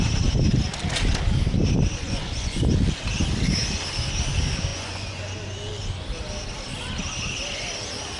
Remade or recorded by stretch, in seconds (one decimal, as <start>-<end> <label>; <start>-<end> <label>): 0.0-2.0 recorded; 2.0-2.6 remade; 2.6-4.7 recorded; 4.7-5.2 remade; 5.2-8.2 recorded